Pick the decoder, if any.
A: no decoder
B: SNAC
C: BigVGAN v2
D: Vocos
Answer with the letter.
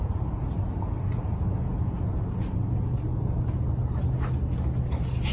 A